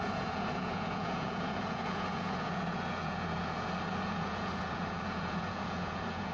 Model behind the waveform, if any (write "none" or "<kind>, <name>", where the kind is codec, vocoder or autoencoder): vocoder, Vocos